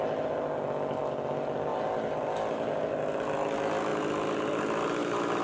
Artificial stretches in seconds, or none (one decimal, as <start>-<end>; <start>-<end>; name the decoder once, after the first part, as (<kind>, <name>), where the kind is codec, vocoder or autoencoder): none